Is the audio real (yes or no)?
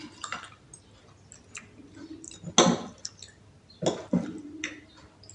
yes